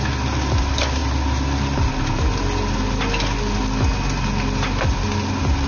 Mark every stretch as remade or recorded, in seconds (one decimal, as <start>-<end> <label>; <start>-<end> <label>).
0.0-5.7 recorded